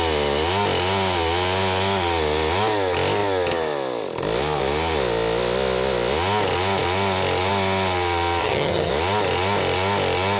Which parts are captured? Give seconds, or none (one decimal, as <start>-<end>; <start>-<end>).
0.0-8.4; 8.9-10.4